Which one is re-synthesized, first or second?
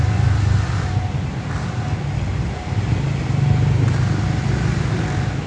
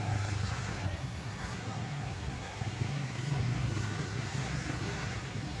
second